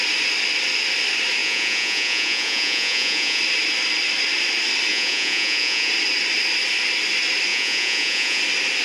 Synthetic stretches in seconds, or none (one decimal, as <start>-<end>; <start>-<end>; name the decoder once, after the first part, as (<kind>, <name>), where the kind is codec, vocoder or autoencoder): 1.4-3.4 (vocoder, Vocos); 4.9-5.9; 7.5-8.4